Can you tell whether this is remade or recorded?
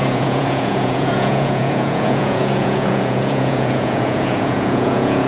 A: remade